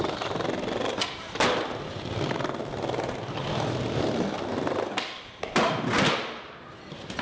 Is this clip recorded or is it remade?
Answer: recorded